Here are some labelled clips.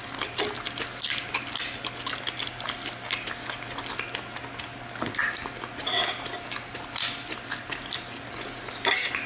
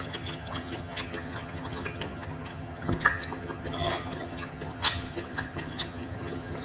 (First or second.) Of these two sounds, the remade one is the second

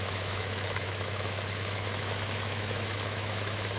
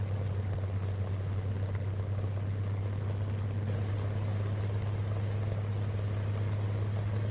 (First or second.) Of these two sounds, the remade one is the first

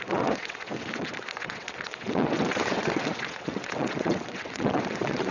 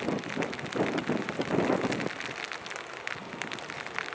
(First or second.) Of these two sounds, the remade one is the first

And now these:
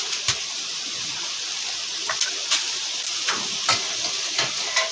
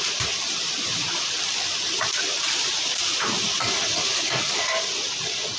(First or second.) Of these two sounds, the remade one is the second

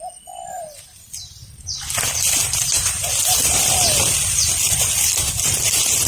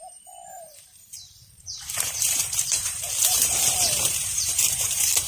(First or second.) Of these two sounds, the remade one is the second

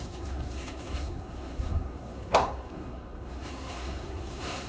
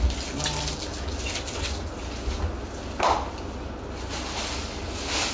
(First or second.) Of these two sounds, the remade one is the first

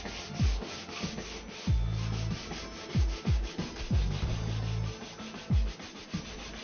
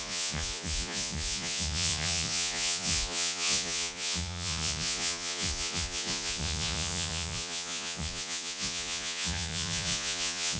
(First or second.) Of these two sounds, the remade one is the second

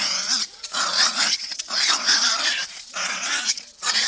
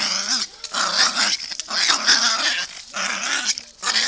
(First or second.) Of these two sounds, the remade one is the first